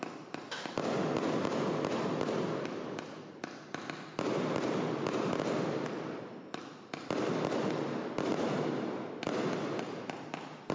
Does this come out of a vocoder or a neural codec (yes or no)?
no